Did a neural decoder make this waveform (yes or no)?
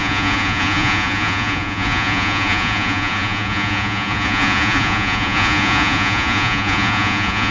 yes